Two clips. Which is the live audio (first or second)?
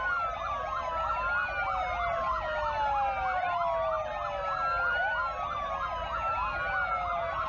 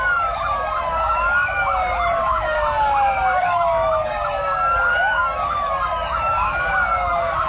first